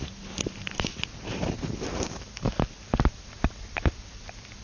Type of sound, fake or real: fake